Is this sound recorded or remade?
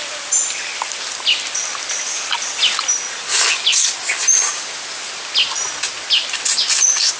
recorded